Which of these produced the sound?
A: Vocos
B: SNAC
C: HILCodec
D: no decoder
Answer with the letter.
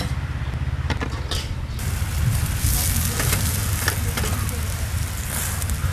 D